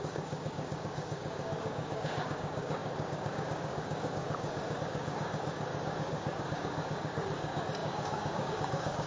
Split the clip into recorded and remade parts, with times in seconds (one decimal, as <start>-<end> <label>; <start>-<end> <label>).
0.0-9.1 remade